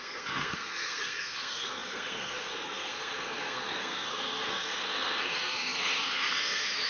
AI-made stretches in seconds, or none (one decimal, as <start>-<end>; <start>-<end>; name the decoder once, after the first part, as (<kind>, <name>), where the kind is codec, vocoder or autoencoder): 0.0-6.9 (codec, SNAC)